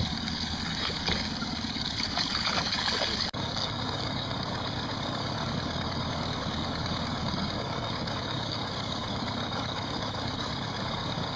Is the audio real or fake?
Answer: fake